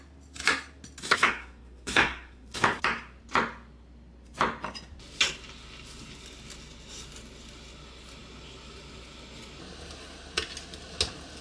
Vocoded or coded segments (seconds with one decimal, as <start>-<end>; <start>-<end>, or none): 1.0-2.8